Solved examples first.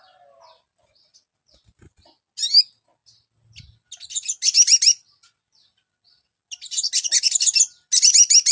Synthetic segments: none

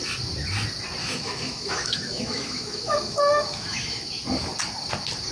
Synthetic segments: 1.0-4.0 (autoencoder, DAC-VAE)

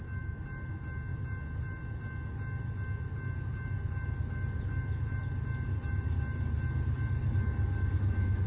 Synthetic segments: 7.2-8.0 (codec, DAC)

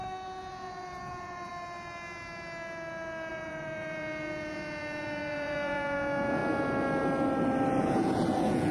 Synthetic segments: 0.0-1.5 (vocoder, Vocos); 3.3-6.4; 7.8-8.7

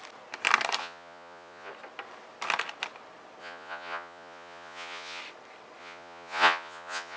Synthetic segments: 0.8-1.7 (vocoder, Vocos); 3.4-5.2; 5.8-7.2

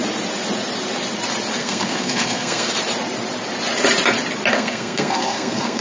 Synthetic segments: 1.6-2.7 (codec, SNAC); 4.5-5.8

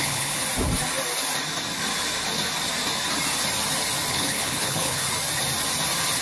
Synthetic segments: 0.0-0.4 (codec, HILCodec); 4.1-5.0

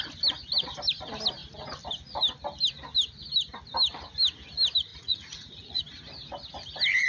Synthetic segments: 4.9-5.8 (vocoder, Vocos)